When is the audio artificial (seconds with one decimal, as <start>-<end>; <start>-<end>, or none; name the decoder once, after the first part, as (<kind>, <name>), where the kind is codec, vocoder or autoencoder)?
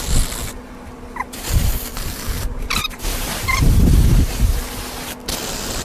1.9-4.3 (vocoder, BigVGAN v2)